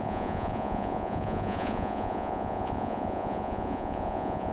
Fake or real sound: fake